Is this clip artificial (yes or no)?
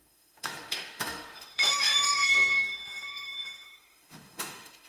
yes